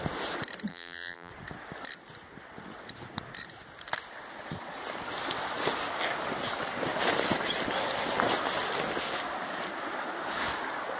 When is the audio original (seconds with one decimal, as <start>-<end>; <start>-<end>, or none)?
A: 0.0-0.7; 1.3-11.0